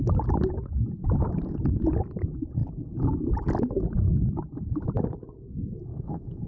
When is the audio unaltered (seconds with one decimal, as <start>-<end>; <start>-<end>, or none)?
0.0-5.9